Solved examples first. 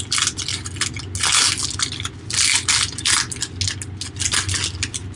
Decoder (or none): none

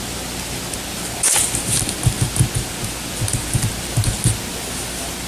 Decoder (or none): none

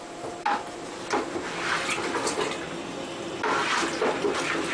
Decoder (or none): none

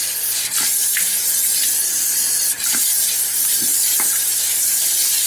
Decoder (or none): none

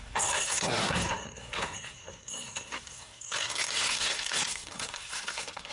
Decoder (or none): codec, SNAC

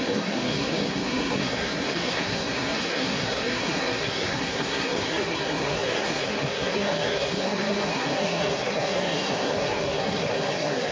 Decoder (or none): codec, SNAC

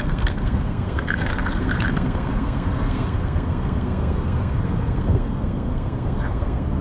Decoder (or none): codec, SNAC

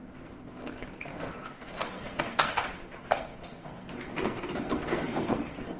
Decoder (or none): codec, SNAC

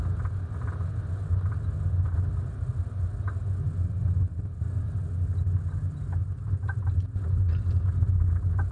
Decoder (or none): none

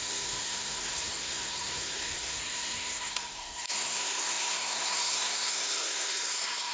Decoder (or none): codec, SNAC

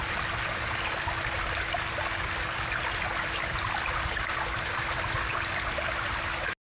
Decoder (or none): none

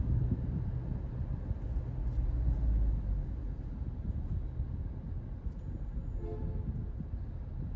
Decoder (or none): none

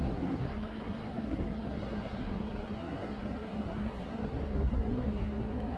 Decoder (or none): codec, SNAC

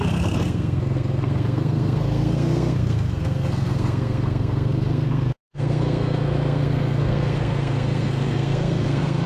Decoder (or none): codec, SNAC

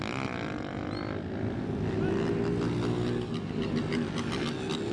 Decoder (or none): none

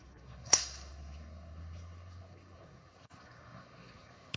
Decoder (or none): codec, SNAC